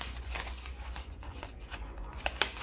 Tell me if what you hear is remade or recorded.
remade